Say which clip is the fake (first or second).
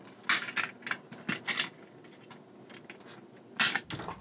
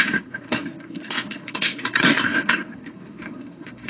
second